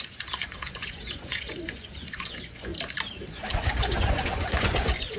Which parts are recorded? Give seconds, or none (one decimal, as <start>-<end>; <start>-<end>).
2.7-3.3